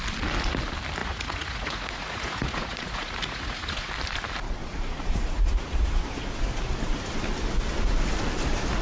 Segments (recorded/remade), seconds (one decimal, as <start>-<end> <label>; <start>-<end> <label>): 0.0-1.0 recorded; 1.0-3.9 remade; 3.9-4.6 recorded; 4.6-6.2 remade; 6.2-8.8 recorded